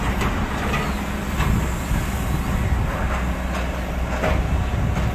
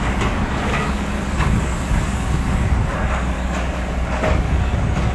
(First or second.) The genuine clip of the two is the first